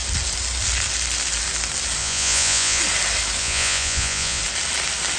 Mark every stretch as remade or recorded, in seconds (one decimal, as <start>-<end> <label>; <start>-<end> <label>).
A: 0.0-2.0 recorded; 2.0-2.8 remade; 2.8-3.4 recorded; 3.4-4.4 remade; 4.4-5.2 recorded